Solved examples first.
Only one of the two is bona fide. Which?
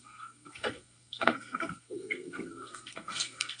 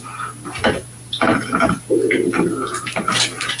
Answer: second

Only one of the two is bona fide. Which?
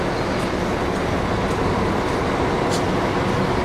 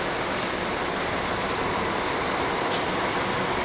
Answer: first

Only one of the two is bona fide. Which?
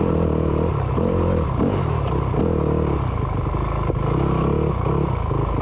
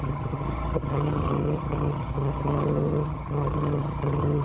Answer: first